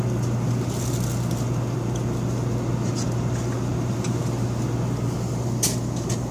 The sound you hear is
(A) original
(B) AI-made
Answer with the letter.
A